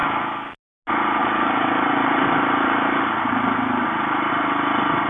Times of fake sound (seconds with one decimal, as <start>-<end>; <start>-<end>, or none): 1.2-4.3